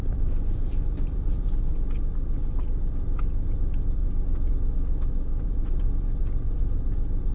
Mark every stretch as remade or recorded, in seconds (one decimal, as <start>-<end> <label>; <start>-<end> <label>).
0.0-1.7 remade; 1.7-4.0 recorded; 4.0-4.5 remade; 4.5-5.3 recorded; 5.3-6.1 remade; 6.1-7.3 recorded